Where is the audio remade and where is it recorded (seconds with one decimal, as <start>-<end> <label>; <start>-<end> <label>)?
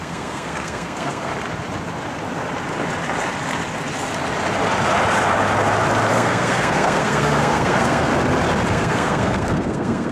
0.0-1.3 remade; 1.3-6.1 recorded; 6.1-8.1 remade; 8.1-8.7 recorded; 8.7-10.1 remade